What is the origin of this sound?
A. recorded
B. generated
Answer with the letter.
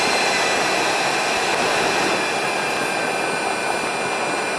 A